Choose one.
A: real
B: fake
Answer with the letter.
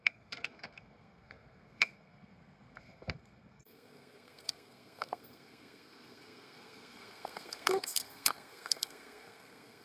B